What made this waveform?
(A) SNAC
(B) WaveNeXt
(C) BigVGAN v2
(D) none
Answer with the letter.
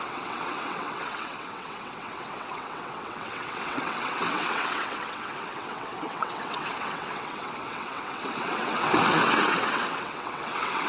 B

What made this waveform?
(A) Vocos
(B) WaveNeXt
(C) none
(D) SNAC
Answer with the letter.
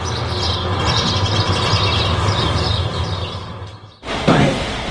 C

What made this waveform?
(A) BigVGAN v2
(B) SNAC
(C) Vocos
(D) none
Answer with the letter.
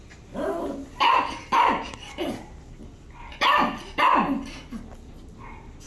D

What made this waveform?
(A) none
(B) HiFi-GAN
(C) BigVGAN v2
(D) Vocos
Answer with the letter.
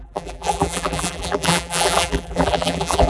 C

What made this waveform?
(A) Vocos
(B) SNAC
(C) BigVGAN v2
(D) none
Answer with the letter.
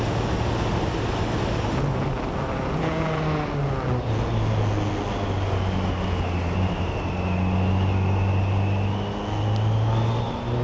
D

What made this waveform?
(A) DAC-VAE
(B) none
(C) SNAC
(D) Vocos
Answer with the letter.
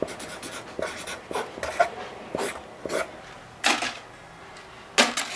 B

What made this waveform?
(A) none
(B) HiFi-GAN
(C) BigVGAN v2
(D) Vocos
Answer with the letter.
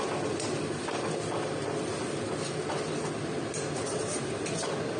A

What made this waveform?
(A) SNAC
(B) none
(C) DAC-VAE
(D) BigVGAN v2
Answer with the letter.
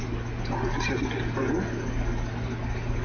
B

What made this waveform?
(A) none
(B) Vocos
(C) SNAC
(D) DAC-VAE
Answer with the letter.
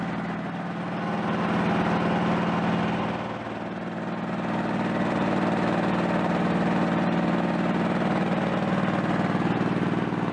A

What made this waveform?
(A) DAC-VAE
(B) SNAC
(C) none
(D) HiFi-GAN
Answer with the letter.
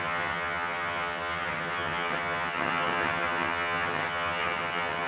D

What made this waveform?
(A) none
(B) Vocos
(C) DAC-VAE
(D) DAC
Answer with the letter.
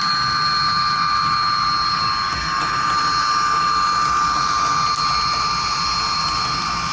A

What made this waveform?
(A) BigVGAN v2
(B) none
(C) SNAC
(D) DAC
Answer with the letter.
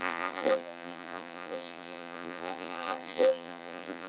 A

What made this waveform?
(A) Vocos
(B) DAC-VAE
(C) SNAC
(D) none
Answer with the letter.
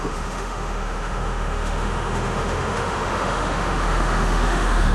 B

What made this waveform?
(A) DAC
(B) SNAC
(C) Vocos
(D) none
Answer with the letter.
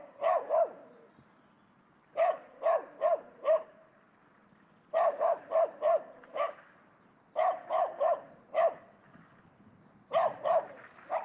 D